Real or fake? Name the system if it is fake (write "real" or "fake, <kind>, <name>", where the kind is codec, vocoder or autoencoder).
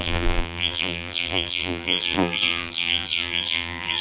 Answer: fake, vocoder, BigVGAN v2